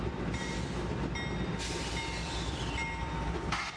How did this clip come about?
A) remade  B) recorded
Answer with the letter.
B